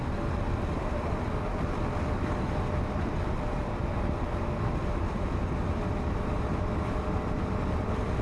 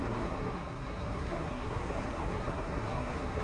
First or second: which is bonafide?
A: first